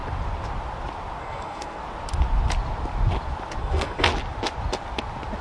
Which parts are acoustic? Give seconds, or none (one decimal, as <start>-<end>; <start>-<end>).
0.0-1.2; 1.8-3.6; 4.1-5.4